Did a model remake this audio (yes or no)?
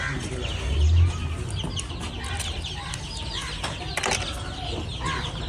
no